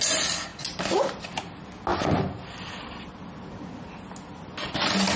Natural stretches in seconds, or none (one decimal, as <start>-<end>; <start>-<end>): 0.0-5.2